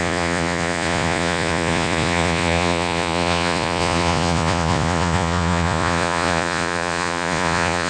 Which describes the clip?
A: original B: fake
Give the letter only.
B